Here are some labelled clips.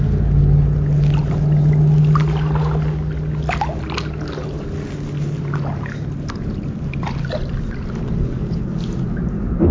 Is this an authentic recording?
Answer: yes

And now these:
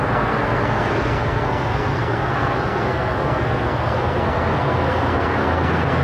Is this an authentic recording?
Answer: no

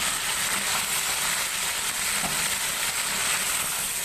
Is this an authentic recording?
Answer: yes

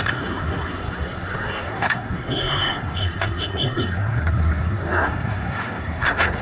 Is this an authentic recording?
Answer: no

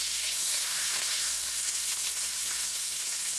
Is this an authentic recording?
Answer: no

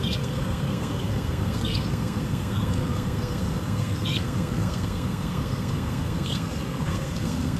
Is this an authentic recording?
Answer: no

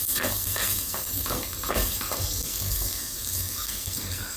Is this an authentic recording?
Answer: no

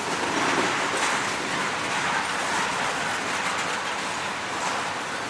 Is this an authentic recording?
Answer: yes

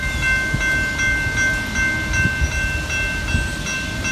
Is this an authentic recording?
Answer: yes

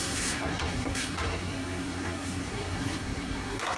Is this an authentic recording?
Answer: no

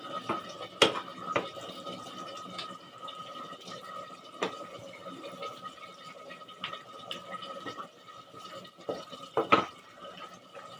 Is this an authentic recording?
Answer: yes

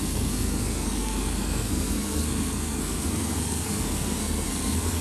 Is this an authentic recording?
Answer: no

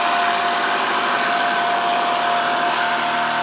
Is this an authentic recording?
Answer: yes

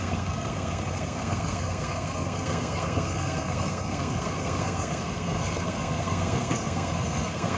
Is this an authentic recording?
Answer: no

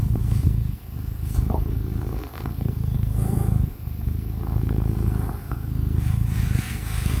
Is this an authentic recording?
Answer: no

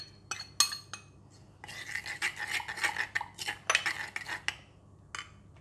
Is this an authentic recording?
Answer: yes